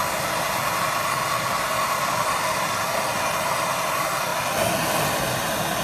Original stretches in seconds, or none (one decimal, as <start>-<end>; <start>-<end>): 0.0-2.0